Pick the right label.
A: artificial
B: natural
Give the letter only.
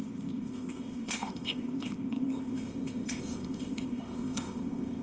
A